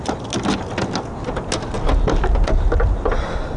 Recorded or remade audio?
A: recorded